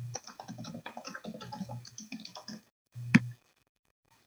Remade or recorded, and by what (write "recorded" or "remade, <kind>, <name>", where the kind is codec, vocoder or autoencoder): remade, codec, DAC